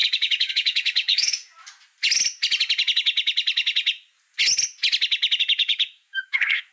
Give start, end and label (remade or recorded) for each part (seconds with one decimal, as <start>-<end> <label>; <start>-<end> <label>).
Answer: 0.0-1.4 remade; 1.4-5.4 recorded; 5.4-6.7 remade